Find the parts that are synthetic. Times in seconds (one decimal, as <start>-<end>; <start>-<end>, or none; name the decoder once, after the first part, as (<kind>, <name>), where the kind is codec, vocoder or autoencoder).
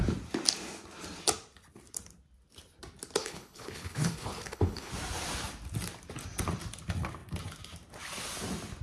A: 3.2-4.9 (codec, HILCodec)